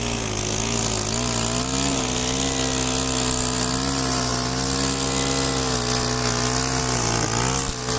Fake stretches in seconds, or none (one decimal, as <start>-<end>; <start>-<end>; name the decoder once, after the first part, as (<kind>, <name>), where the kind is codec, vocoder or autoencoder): none

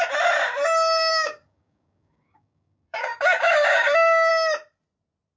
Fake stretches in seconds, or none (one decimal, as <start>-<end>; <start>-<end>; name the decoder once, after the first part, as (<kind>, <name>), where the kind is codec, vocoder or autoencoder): 1.1-4.3 (codec, DAC)

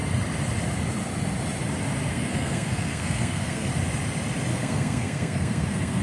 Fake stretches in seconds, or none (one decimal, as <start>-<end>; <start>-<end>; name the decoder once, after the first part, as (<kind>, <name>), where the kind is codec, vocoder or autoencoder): 2.1-3.7 (codec, SNAC); 4.5-6.0

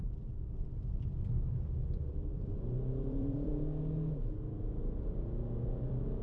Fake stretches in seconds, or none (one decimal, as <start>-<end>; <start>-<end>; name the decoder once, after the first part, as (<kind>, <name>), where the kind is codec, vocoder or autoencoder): 0.0-3.5 (vocoder, BigVGAN v2)